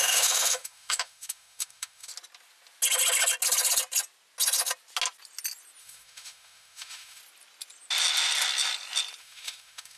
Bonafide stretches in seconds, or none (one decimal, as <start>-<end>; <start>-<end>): 2.1-5.8; 7.2-9.2